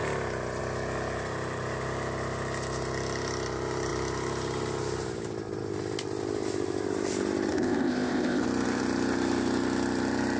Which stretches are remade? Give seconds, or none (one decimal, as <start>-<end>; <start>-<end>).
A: 7.5-8.4